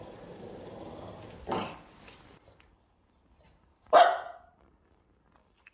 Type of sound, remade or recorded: recorded